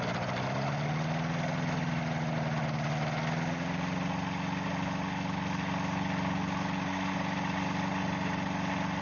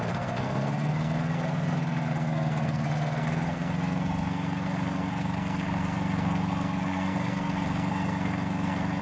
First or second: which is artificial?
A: second